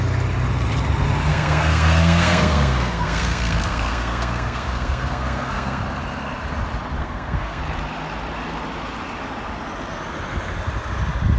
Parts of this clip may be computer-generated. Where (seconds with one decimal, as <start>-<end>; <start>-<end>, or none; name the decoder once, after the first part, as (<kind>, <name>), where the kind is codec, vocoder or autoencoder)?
1.3-5.8 (codec, SNAC); 7.0-7.6